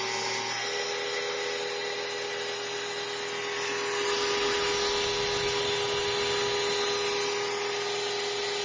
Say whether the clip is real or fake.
real